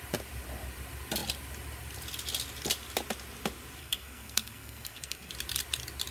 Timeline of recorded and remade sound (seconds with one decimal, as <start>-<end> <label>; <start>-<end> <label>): 0.0-3.8 recorded; 3.8-5.3 remade; 5.3-6.1 recorded